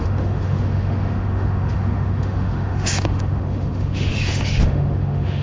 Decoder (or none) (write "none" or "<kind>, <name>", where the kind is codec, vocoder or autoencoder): autoencoder, DAC-VAE